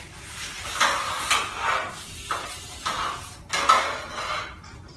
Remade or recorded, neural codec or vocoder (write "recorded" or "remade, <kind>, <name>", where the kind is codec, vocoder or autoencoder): recorded